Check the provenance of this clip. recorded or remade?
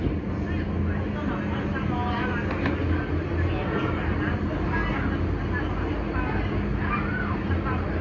recorded